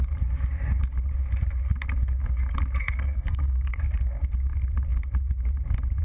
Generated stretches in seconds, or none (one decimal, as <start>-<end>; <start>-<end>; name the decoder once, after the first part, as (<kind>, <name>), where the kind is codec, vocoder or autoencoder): 2.8-3.8 (codec, SNAC)

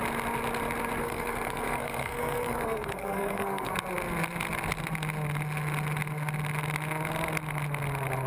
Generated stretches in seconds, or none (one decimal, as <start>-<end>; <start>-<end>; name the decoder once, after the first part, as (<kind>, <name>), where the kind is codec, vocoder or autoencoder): 1.0-3.7 (codec, SNAC)

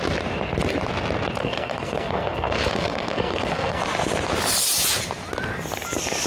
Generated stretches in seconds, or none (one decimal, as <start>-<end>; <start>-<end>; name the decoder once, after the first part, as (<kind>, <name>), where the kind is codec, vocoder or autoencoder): 1.4-3.8 (codec, SNAC)

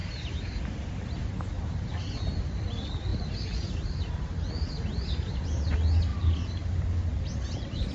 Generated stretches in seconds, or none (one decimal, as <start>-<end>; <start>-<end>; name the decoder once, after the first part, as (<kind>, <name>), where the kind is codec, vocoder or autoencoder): 0.0-0.6 (vocoder, BigVGAN v2); 3.1-5.5; 6.1-6.7